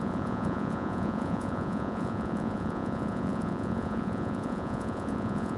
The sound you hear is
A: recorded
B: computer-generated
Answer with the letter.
B